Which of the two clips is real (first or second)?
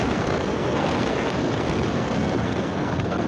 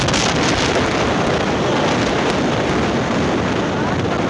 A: second